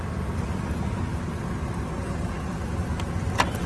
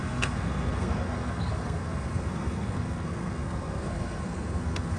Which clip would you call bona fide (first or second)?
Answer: first